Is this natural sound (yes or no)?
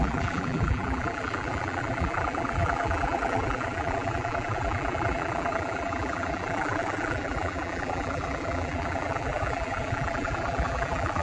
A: no